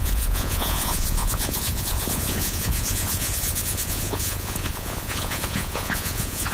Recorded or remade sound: remade